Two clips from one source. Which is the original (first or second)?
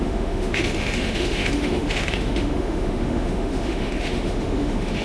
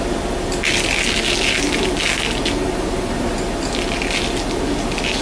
second